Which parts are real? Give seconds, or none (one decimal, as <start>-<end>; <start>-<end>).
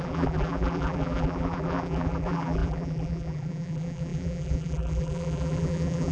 none